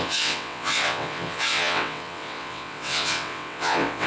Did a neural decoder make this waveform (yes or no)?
yes